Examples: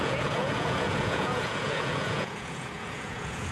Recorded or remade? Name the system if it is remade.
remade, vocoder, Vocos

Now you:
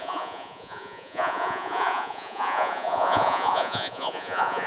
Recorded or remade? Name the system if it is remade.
remade, vocoder, Vocos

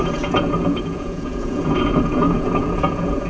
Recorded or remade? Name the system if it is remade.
remade, vocoder, Vocos